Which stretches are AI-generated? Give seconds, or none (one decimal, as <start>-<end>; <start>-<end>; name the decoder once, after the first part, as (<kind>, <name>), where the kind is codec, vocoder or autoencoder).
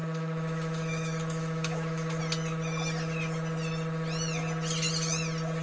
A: 0.0-2.2 (autoencoder, DAC-VAE)